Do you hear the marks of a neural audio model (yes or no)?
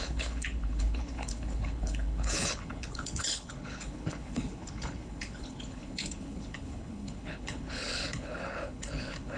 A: yes